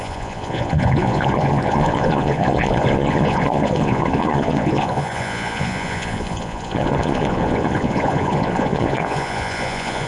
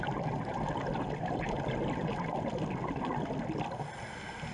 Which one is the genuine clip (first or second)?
second